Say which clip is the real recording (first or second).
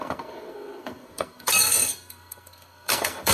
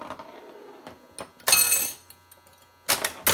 second